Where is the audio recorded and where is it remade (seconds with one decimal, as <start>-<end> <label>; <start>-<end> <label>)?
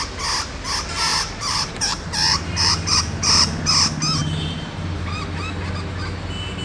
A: 0.0-1.1 recorded; 1.1-3.7 remade; 3.7-4.2 recorded; 4.2-5.2 remade; 5.2-6.6 recorded